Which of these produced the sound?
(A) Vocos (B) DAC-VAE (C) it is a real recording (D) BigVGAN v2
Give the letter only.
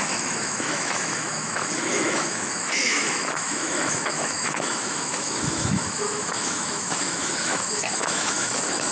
B